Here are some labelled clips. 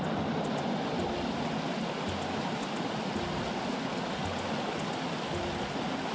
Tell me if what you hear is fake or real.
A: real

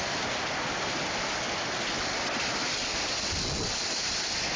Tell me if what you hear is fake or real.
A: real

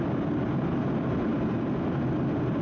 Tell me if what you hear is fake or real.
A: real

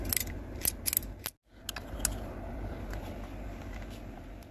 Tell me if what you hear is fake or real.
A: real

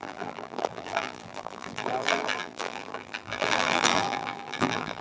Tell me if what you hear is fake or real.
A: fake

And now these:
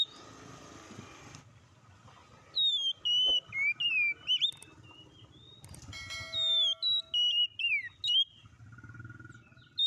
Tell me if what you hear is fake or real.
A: real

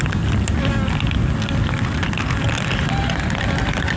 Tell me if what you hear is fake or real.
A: real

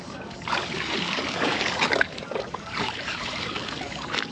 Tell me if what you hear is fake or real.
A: fake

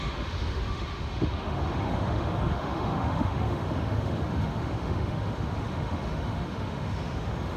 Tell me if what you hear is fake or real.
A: fake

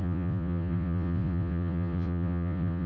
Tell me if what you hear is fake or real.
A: fake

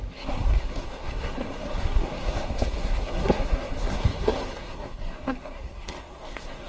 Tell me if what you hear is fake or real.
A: fake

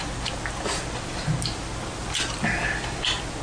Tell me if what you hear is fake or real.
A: real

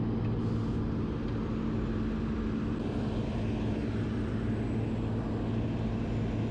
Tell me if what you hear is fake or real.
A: real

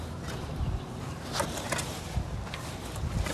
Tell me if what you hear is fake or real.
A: fake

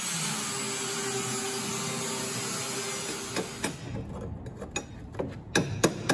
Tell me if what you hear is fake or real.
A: real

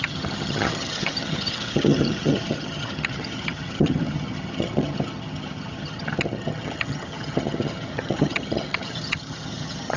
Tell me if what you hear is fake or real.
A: fake